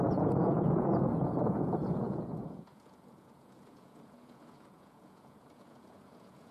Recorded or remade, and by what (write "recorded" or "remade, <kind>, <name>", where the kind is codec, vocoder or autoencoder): remade, vocoder, Vocos